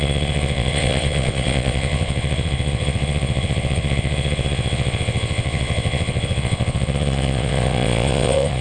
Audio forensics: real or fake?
fake